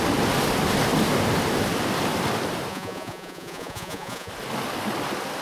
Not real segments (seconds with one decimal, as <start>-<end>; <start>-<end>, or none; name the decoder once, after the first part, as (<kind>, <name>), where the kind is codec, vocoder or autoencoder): 2.7-4.3 (vocoder, Vocos)